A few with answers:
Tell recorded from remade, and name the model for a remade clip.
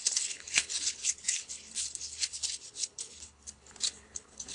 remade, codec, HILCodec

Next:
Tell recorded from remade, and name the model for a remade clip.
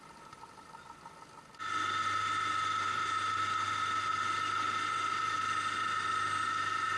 recorded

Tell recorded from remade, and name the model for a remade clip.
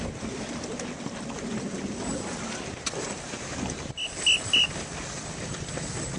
recorded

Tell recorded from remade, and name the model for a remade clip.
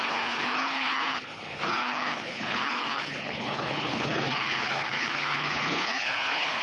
remade, codec, HILCodec